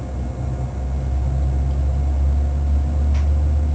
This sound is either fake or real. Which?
real